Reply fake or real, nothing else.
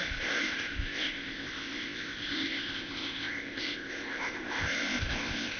fake